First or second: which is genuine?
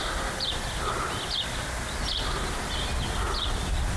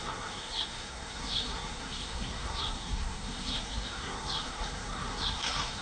first